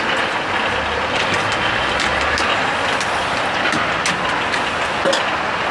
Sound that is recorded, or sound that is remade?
recorded